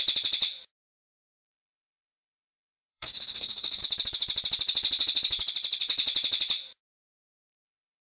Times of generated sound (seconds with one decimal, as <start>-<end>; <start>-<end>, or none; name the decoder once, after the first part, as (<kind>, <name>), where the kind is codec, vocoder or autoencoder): 2.9-3.8 (codec, DAC)